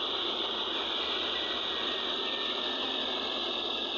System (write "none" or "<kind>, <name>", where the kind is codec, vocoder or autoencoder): none